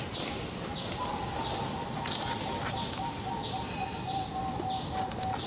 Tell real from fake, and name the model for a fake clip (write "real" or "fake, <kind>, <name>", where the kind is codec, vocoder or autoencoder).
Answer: real